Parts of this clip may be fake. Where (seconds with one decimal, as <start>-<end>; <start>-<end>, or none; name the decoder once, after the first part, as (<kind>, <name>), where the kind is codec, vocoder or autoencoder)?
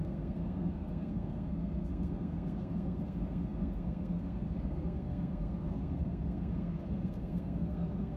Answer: 0.0-8.2 (codec, SNAC)